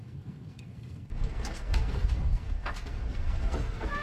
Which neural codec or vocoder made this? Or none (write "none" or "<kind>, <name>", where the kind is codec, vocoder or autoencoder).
codec, SNAC